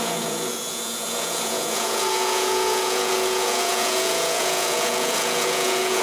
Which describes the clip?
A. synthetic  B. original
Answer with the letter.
A